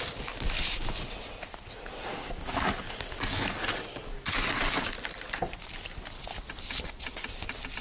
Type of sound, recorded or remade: recorded